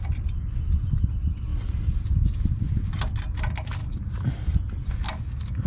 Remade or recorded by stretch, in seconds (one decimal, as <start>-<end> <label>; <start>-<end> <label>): 0.0-1.5 recorded; 1.5-2.7 remade; 2.7-3.8 recorded; 3.8-4.9 remade; 4.9-5.7 recorded